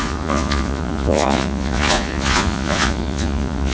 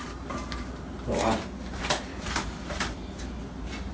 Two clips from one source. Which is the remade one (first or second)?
first